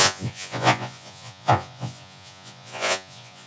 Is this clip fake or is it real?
fake